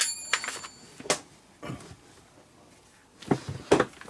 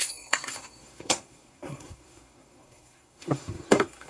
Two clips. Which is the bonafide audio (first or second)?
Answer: first